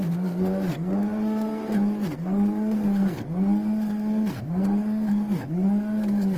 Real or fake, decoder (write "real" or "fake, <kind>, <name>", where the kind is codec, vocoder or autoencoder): fake, codec, SNAC